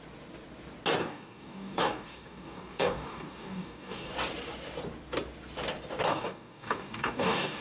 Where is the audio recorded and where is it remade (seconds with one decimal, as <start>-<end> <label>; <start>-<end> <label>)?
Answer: 0.0-1.0 recorded; 1.0-4.1 remade; 4.1-6.1 recorded; 6.1-7.6 remade